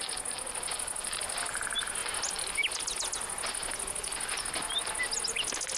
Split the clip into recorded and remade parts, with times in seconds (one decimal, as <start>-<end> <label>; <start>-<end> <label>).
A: 0.0-5.8 recorded